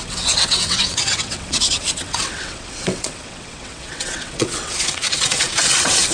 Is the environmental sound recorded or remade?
remade